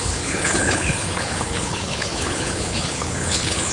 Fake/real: fake